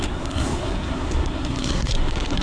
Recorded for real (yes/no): no